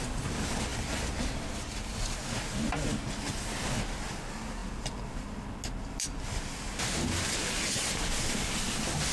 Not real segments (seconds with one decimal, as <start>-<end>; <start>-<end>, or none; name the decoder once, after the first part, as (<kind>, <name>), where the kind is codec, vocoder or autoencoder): 0.7-1.3 (vocoder, BigVGAN v2)